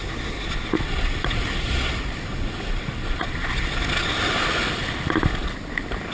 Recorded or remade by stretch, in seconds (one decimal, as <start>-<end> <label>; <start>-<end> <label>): 0.0-1.9 remade; 1.9-2.3 recorded; 2.3-4.1 remade; 4.1-6.1 recorded